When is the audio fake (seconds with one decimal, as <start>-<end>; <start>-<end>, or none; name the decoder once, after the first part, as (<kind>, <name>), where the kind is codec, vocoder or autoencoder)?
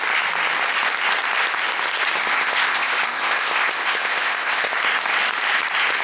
2.2-4.7 (codec, ZipCodec)